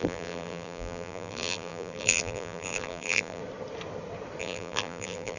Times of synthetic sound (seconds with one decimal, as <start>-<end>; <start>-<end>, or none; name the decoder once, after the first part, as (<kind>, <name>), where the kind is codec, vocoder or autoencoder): 0.0-3.4 (vocoder, BigVGAN v2); 4.4-5.4